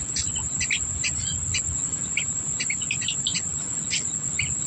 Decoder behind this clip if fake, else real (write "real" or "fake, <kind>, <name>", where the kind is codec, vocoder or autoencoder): real